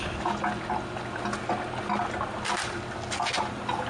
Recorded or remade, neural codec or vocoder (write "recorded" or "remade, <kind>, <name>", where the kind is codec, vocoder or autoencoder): recorded